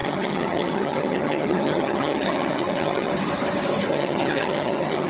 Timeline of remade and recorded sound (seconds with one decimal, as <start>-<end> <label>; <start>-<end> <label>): 0.0-3.1 remade; 3.1-3.9 recorded; 3.9-5.1 remade